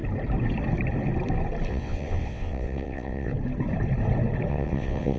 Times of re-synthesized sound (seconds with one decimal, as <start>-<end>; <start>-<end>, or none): 1.7-3.3; 4.5-5.2